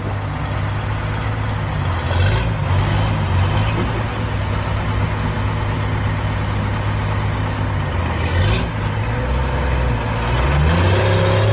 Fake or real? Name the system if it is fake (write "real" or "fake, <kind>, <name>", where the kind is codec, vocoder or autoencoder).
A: real